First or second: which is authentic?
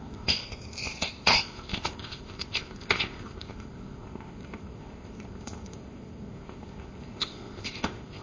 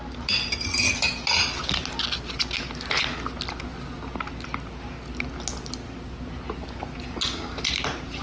second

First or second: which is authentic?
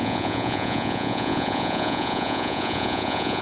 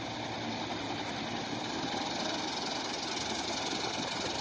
second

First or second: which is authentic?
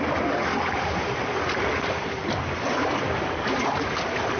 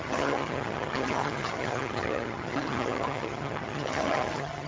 first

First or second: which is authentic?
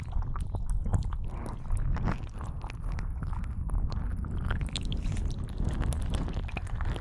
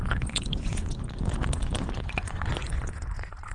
first